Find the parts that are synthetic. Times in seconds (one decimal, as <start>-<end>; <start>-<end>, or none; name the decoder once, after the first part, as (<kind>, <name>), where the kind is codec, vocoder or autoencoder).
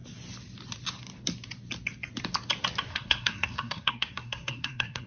2.9-5.1 (codec, SNAC)